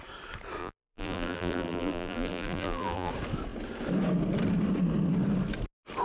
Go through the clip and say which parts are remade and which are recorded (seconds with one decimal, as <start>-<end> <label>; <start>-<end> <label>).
0.0-0.6 recorded; 0.6-3.1 remade; 3.1-6.0 recorded